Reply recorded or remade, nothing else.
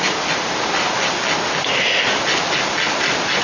recorded